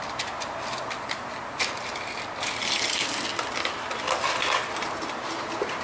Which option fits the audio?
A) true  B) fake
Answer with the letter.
A